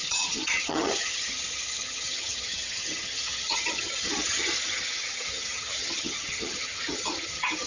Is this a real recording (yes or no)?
no